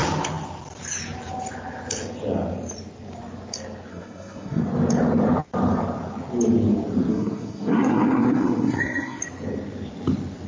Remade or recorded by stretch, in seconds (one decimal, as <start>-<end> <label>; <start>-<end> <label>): 0.0-3.9 recorded; 3.9-4.6 remade; 4.6-7.1 recorded; 7.1-9.2 remade; 9.2-10.5 recorded